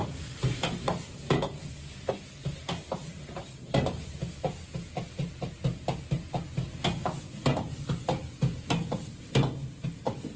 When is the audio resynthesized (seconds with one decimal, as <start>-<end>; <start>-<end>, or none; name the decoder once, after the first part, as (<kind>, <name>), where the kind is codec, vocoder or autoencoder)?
none